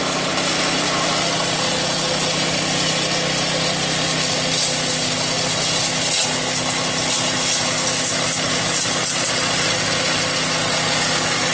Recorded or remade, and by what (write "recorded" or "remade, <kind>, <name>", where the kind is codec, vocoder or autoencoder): recorded